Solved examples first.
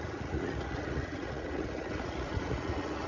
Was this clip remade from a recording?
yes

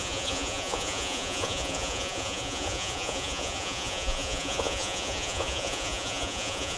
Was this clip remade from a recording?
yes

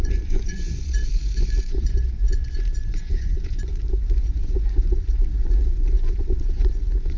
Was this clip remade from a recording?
yes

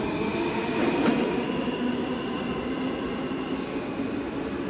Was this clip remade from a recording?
no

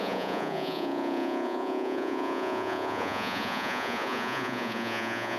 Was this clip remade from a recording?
yes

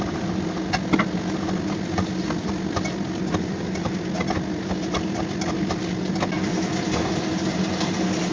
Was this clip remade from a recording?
no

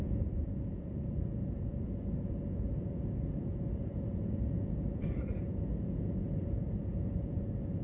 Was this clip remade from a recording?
yes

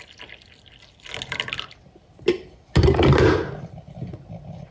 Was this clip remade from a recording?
no